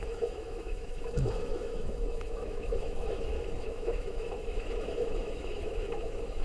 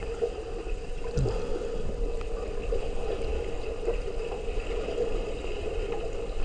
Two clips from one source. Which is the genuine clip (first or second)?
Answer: second